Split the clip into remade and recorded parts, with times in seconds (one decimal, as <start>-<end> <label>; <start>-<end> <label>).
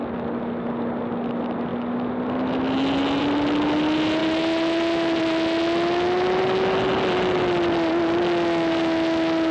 0.0-9.5 recorded